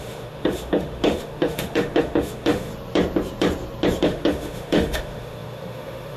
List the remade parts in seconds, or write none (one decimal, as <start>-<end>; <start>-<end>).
0.0-2.7; 4.0-6.2